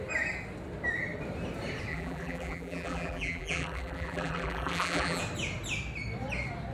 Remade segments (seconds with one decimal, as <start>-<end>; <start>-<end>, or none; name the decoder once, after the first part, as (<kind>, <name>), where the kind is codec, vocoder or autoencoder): 1.9-5.2 (vocoder, BigVGAN v2)